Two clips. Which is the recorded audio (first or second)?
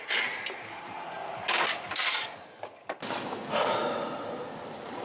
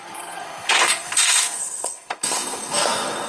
first